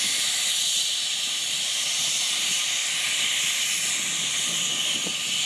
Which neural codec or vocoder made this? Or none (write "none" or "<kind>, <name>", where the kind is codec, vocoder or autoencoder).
none